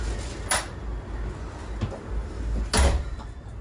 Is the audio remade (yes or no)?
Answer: no